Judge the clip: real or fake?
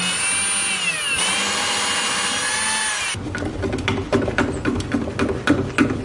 real